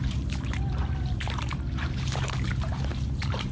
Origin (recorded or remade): remade